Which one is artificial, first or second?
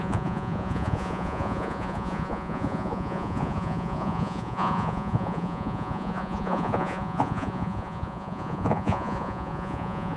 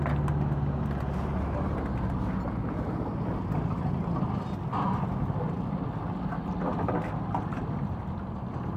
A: first